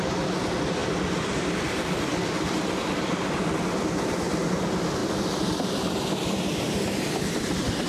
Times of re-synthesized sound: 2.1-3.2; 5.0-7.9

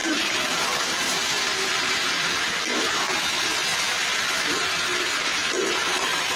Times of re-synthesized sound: 0.0-3.1; 4.5-6.4

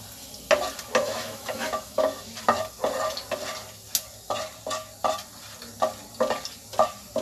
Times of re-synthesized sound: 1.0-2.3

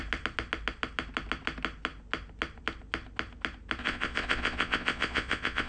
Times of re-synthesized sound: 3.8-5.7

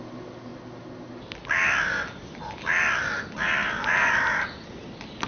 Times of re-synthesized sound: none